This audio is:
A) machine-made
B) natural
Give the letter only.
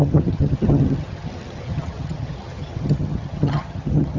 A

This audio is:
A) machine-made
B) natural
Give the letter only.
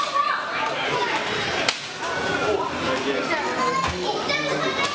B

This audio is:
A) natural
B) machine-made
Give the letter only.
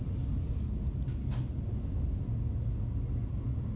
A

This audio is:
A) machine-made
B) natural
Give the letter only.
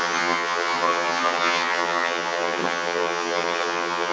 A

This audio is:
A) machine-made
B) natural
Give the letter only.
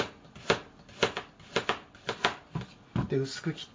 B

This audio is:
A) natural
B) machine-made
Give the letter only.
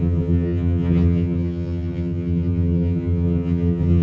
B